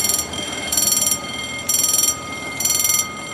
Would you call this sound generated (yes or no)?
yes